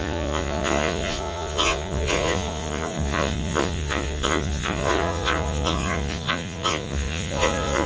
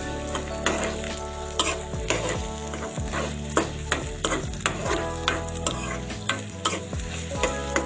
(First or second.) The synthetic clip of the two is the first